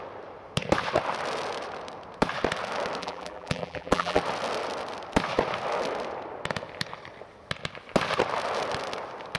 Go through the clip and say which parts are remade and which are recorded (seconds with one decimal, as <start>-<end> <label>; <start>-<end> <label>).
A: 0.0-3.0 recorded; 3.0-4.2 remade; 4.2-9.4 recorded